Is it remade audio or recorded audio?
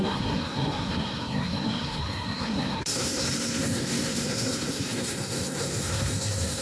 remade